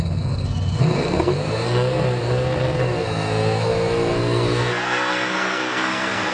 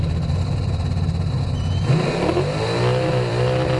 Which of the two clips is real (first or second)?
second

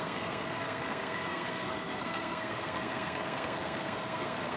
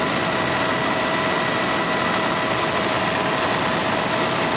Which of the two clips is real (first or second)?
second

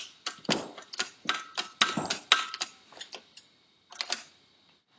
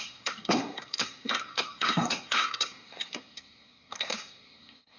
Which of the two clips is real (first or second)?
first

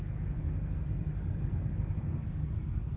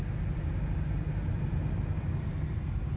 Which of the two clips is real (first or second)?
second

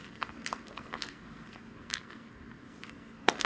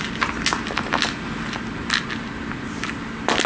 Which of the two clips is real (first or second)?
second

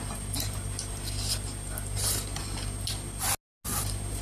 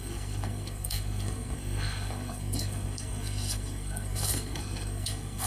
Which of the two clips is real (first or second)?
first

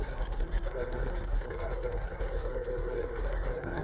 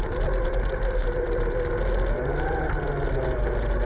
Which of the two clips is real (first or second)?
second